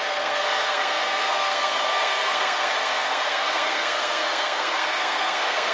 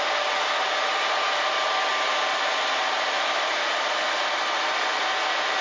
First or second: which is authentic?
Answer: second